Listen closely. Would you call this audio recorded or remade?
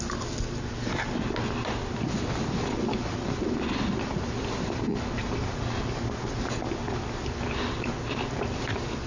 recorded